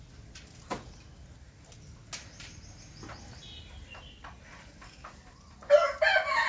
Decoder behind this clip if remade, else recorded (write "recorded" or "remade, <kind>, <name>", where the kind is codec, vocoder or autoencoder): recorded